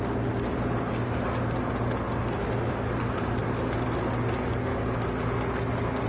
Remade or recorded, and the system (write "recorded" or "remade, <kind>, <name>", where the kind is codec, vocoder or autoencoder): recorded